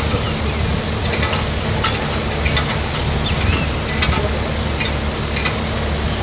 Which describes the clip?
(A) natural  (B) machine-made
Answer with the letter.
A